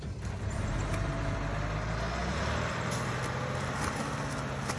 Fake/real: real